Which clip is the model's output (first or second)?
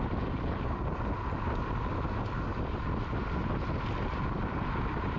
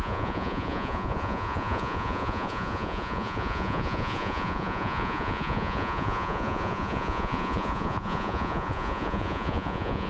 second